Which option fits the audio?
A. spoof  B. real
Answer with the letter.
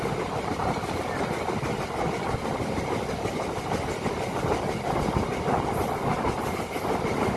B